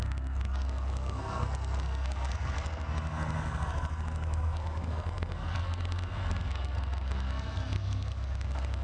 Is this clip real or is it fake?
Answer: fake